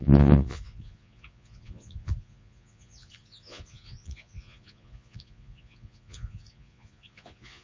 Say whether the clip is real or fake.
fake